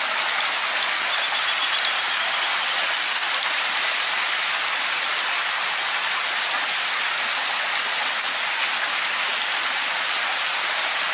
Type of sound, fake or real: real